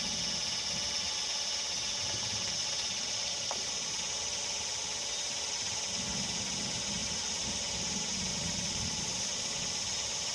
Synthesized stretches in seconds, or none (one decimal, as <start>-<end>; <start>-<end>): 2.6-4.0; 8.3-9.7